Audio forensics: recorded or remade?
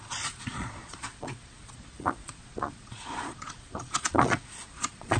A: remade